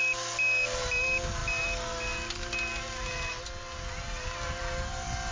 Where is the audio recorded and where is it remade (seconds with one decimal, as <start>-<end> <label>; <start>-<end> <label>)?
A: 0.0-5.3 recorded